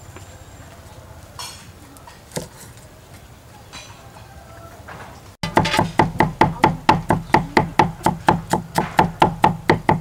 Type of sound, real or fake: real